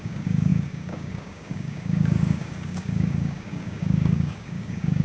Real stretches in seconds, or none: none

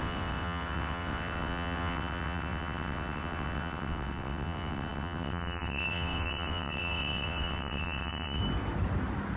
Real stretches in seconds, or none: 8.4-9.4

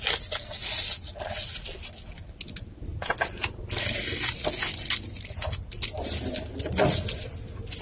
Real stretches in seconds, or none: 0.0-7.8

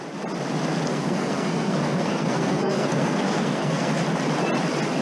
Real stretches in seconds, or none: 0.0-0.9; 3.9-5.0